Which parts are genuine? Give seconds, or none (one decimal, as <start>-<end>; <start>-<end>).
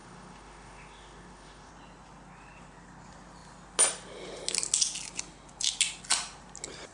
1.7-6.9